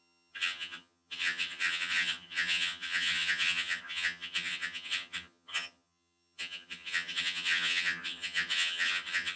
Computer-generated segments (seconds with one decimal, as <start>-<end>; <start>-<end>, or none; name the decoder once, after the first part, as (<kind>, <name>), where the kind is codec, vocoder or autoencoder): 0.0-9.4 (vocoder, HiFi-GAN)